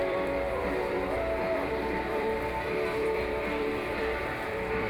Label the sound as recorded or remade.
remade